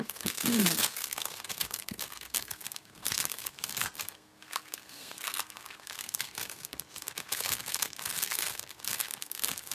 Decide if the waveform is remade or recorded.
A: remade